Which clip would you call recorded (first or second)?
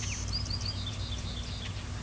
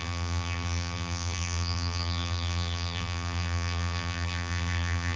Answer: first